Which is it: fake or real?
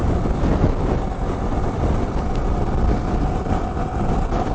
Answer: real